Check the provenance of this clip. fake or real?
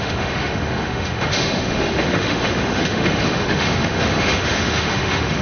fake